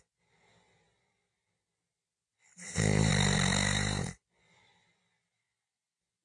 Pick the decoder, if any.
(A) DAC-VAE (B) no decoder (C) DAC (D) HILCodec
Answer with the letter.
B